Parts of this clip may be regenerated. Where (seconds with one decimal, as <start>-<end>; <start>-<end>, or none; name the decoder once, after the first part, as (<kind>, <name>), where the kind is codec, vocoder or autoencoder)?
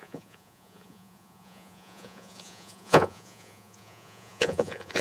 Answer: 0.0-5.0 (vocoder, Vocos)